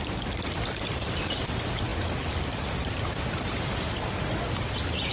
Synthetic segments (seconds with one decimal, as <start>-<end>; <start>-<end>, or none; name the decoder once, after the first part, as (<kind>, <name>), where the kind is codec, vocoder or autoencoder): none